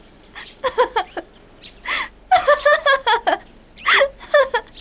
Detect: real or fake real